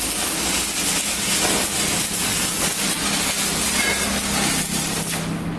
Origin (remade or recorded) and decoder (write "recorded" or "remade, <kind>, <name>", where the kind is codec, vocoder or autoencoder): recorded